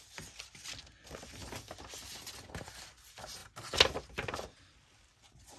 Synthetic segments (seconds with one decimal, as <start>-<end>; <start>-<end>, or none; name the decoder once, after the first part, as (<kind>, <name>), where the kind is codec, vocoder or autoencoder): none

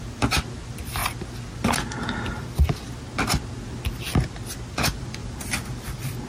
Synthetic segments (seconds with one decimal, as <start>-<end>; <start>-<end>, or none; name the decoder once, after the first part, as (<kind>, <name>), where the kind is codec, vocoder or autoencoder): 0.0-1.0 (vocoder, BigVGAN v2); 4.8-5.2

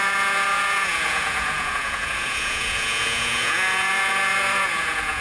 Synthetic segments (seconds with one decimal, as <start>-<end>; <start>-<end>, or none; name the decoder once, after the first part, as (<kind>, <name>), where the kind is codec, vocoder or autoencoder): 0.0-5.2 (vocoder, Vocos)

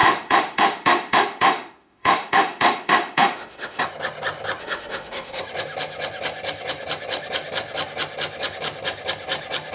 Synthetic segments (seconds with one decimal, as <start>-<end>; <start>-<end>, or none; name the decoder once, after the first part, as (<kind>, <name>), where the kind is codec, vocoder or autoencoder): 0.0-3.8 (autoencoder, DAC-VAE); 4.6-5.4

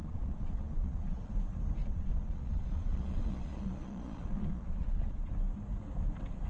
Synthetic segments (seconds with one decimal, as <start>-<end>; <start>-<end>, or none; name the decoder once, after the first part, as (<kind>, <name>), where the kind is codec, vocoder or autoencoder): 0.0-1.3 (vocoder, Vocos); 1.8-5.3

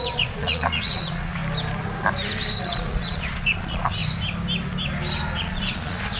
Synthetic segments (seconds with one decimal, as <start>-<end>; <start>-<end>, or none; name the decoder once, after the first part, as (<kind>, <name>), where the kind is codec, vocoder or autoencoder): 0.0-1.4 (vocoder, Vocos); 2.6-4.0; 5.4-6.2